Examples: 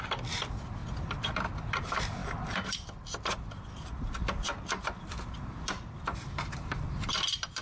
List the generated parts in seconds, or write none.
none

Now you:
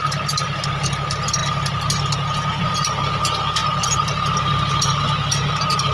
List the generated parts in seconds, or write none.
none

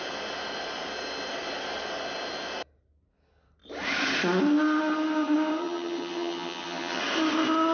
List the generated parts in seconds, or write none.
5.6-7.0

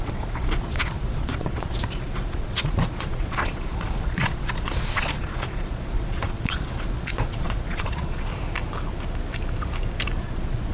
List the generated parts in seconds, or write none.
0.0-8.3; 10.2-10.7

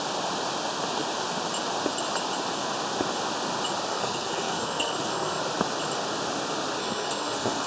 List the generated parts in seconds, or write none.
3.9-5.4; 6.8-7.7

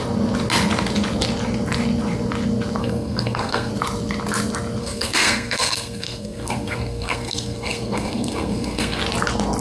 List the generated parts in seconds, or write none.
2.8-3.7; 4.8-9.0

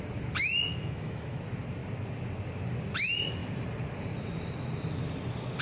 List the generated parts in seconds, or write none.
0.7-1.4

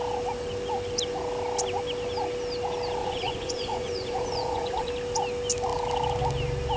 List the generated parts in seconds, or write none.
3.0-4.9